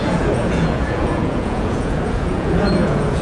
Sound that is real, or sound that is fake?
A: fake